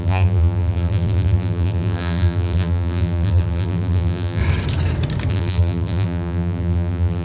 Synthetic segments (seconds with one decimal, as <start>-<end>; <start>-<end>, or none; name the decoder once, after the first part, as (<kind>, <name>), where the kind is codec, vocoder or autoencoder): 0.0-4.4 (vocoder, BigVGAN v2); 5.3-7.2